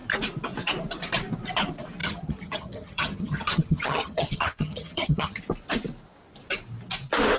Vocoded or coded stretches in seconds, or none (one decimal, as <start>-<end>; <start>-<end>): 2.0-5.4